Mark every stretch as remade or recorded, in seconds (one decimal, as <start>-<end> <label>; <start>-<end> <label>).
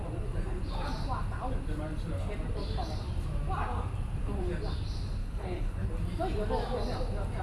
0.0-5.2 recorded; 5.2-5.9 remade; 5.9-7.4 recorded